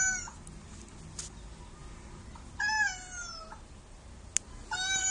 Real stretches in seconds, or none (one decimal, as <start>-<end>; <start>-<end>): 0.0-5.1